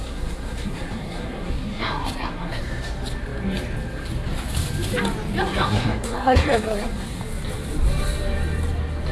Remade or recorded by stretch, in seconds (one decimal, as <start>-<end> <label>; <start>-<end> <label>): 0.0-2.8 remade; 2.8-5.4 recorded; 5.4-7.2 remade; 7.2-9.1 recorded